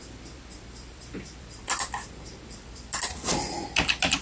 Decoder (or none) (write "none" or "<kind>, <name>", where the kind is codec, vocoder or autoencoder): vocoder, BigVGAN v2